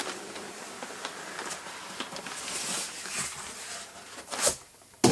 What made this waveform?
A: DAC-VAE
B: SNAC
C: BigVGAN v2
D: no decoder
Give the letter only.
D